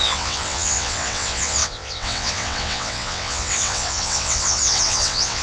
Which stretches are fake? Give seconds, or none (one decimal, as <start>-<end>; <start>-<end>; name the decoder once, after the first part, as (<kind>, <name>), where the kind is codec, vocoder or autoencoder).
0.0-5.4 (vocoder, WaveNeXt)